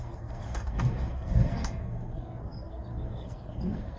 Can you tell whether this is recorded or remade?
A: remade